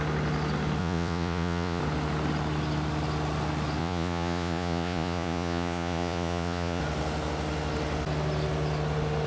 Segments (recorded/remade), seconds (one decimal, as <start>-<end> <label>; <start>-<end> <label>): 0.0-0.8 recorded; 0.8-1.8 remade; 1.8-3.8 recorded; 3.8-6.8 remade; 6.8-9.3 recorded